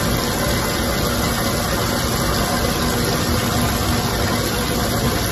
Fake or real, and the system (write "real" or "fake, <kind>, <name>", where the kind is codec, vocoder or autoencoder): real